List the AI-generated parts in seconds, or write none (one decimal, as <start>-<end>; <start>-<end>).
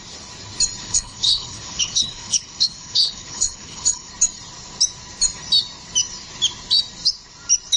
0.8-4.1